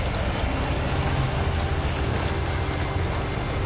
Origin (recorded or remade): recorded